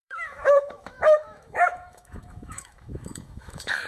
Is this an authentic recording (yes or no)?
no